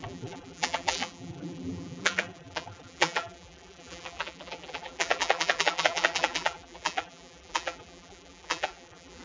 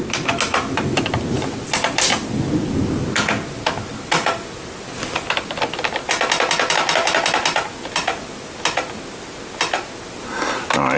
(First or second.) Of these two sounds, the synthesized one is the first